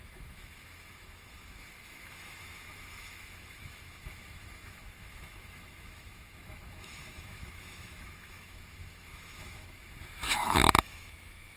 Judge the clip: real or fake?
fake